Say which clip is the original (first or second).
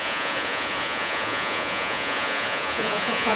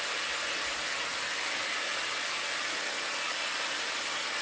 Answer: second